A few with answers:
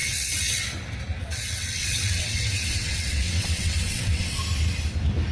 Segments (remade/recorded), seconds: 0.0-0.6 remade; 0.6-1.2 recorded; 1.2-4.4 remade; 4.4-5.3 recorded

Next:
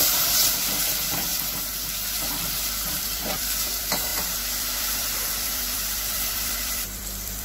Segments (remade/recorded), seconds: 0.0-1.3 remade; 1.3-2.9 recorded; 2.9-7.4 remade